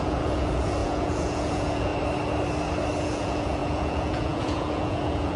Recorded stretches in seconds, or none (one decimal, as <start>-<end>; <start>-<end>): 1.9-3.0